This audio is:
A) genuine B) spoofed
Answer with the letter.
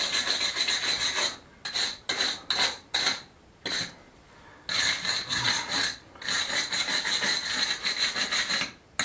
A